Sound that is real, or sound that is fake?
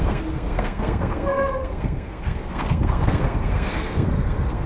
fake